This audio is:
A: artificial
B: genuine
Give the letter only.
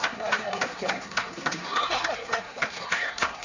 A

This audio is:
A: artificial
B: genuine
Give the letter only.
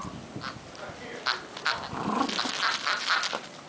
B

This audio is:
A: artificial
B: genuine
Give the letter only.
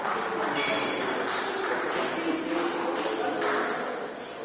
B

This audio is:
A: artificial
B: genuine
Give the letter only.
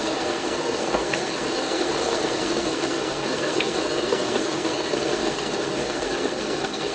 A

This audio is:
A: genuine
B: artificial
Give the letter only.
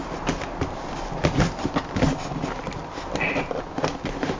A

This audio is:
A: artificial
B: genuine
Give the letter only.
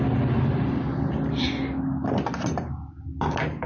B